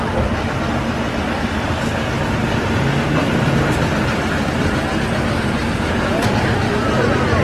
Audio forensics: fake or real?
real